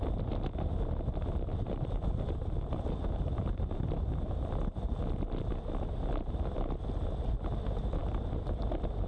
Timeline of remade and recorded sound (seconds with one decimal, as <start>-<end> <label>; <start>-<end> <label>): 0.0-1.5 recorded; 1.5-3.8 remade; 3.8-9.1 recorded